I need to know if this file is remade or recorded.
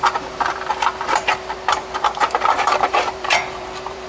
remade